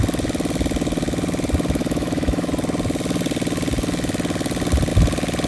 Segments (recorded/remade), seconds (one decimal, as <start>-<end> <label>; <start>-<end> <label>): 0.0-1.8 recorded; 1.8-2.5 remade; 2.5-5.5 recorded